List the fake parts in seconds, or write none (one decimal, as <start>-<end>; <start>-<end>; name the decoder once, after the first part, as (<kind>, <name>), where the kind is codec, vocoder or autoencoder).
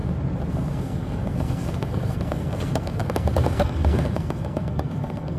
0.5-5.4 (codec, SNAC)